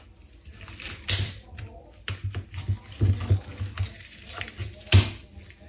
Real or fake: real